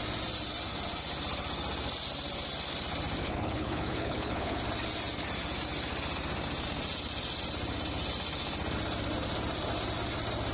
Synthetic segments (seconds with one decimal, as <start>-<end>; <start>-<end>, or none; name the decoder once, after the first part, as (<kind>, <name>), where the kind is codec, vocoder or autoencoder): 3.2-4.6 (codec, HILCodec)